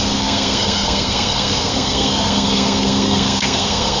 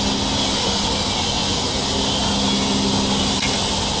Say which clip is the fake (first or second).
first